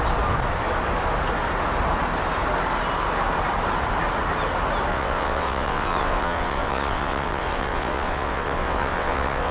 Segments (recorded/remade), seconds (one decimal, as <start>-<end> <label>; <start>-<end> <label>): 0.0-4.9 recorded; 4.9-9.5 remade

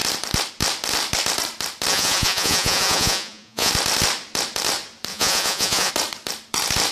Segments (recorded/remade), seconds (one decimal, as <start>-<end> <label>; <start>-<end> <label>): 0.0-1.9 recorded; 1.9-3.7 remade; 3.7-5.1 recorded; 5.1-5.9 remade; 5.9-6.9 recorded

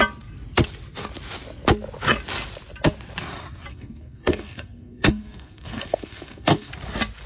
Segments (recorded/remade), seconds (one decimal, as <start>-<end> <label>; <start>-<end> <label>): 0.0-3.7 recorded; 3.7-6.7 remade; 6.7-7.3 recorded

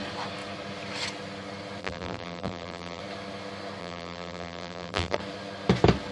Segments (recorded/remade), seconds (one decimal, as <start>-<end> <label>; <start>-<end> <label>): 0.0-1.8 recorded; 1.8-3.0 remade; 3.0-3.8 recorded; 3.8-5.2 remade; 5.2-6.1 recorded

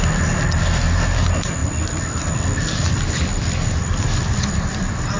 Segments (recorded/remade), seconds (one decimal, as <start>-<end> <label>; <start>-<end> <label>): 0.0-5.2 recorded

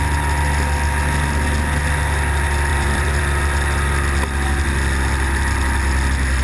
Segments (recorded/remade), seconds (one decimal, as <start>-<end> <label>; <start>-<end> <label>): 0.0-2.7 recorded; 2.7-3.2 remade; 3.2-6.4 recorded